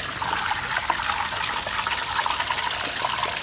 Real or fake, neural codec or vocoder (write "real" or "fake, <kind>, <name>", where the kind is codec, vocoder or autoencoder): real